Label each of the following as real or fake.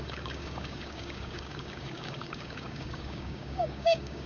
fake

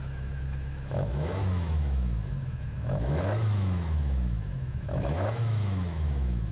fake